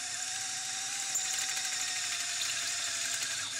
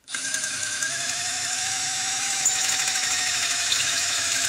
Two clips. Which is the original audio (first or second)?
first